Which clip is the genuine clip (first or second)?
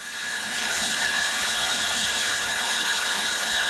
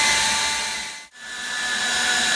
second